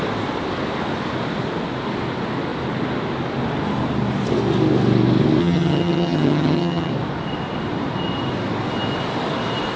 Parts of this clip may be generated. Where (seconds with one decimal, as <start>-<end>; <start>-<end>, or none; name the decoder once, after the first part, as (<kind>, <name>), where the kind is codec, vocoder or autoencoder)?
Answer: 5.4-6.9 (vocoder, HiFi-GAN)